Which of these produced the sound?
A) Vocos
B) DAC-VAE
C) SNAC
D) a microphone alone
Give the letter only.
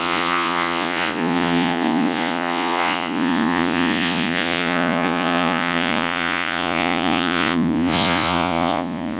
A